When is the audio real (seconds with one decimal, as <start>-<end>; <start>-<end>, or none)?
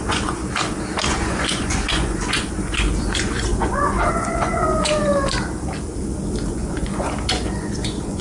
0.4-1.1; 5.0-6.5